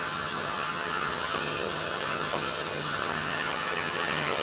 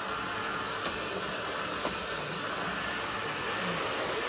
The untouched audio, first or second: second